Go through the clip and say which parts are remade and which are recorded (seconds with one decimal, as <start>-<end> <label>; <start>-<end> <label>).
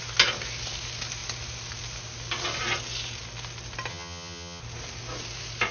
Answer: 0.0-3.9 recorded; 3.9-4.6 remade; 4.6-5.7 recorded